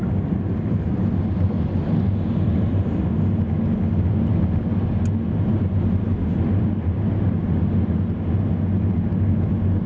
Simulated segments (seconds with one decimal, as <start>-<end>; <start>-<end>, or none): 0.0-3.4